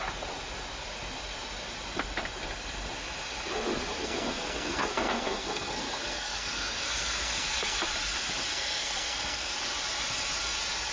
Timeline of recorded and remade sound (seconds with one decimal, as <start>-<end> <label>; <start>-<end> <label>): 0.0-4.0 recorded; 4.0-7.8 remade; 7.8-8.5 recorded; 8.5-9.5 remade; 9.5-10.9 recorded